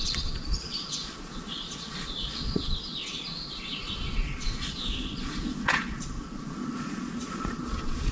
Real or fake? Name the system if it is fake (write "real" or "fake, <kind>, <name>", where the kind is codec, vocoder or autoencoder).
fake, vocoder, Vocos